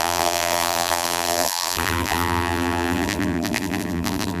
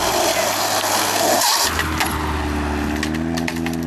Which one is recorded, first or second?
second